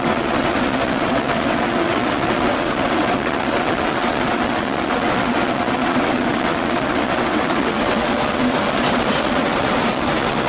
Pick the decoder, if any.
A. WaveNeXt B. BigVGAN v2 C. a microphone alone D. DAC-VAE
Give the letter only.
A